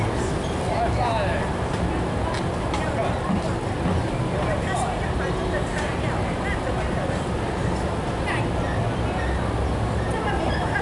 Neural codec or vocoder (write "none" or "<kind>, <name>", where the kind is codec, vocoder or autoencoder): none